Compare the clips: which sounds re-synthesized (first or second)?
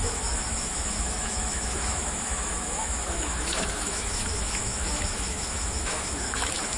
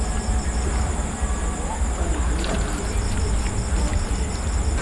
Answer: first